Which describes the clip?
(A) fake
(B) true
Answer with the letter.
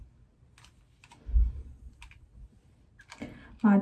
B